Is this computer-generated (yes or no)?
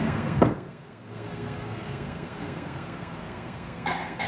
yes